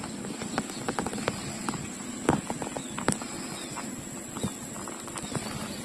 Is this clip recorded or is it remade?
recorded